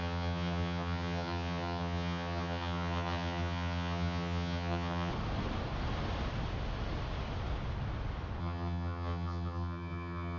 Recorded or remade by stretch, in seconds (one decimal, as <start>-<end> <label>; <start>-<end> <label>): 0.0-5.1 remade; 5.1-8.4 recorded; 8.4-10.4 remade